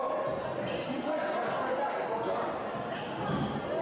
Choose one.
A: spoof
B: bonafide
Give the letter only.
B